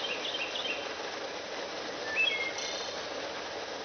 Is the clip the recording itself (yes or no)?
yes